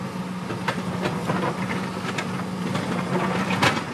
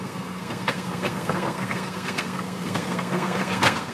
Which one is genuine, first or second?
first